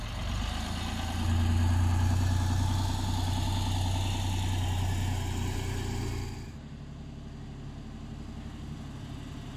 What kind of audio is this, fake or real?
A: real